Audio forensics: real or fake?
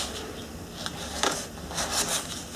real